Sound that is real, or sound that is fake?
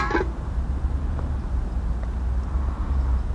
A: real